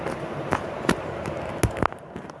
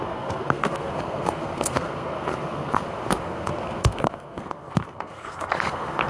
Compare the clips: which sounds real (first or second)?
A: first